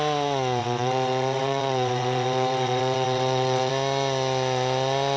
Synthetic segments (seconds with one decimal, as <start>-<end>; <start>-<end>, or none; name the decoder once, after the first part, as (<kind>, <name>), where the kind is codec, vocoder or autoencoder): 0.6-3.7 (vocoder, WaveNeXt)